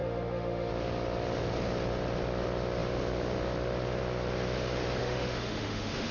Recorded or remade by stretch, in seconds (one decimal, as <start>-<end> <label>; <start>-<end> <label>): 0.0-0.7 remade; 0.7-5.0 recorded; 5.0-6.1 remade